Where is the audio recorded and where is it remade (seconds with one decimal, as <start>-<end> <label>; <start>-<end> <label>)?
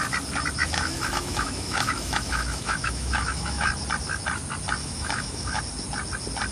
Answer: 0.0-0.6 recorded; 0.6-3.7 remade; 3.7-4.8 recorded; 4.8-5.6 remade; 5.6-6.5 recorded